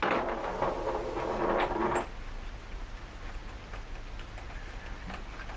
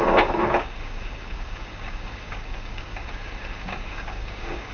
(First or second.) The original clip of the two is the first